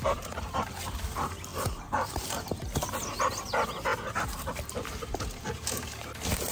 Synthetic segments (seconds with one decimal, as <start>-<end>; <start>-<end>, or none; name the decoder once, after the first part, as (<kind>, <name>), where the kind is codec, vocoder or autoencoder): 1.5-3.4 (vocoder, BigVGAN v2)